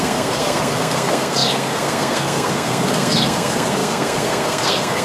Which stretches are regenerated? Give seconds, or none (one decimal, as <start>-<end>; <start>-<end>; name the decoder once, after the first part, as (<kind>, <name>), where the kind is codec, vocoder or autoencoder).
0.0-5.0 (codec, SNAC)